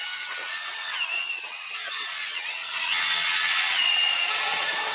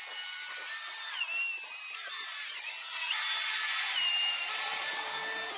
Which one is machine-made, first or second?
first